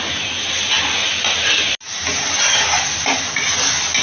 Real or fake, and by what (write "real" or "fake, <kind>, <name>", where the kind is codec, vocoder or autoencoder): real